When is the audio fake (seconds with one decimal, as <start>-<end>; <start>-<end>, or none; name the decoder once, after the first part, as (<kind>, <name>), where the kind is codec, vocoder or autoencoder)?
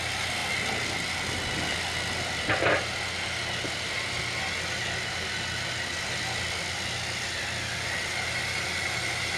none